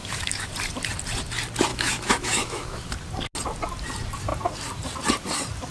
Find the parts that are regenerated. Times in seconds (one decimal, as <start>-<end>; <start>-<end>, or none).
0.0-0.5; 1.7-2.9